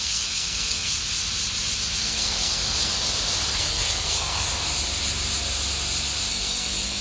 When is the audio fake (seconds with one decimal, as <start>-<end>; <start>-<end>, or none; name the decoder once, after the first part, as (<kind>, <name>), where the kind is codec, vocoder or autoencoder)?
0.0-1.0 (codec, SNAC); 2.0-2.9; 3.5-4.5; 6.3-7.0